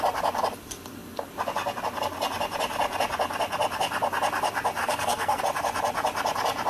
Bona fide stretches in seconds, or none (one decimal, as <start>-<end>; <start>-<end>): 0.0-4.8; 5.4-6.7